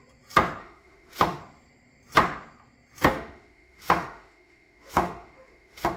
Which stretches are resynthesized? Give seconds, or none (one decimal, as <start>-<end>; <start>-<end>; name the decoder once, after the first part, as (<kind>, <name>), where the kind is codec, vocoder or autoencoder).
0.6-1.4 (autoencoder, DAC-VAE); 3.1-6.0